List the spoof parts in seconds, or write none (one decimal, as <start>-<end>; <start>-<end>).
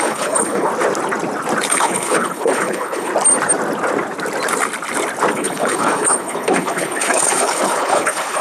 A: 0.0-0.7; 1.7-3.1; 5.3-8.4